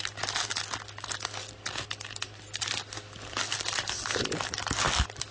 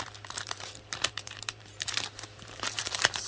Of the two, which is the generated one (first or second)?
second